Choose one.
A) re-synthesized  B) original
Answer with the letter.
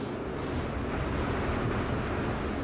B